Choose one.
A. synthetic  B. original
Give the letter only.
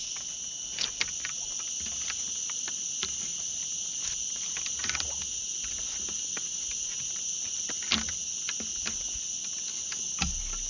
B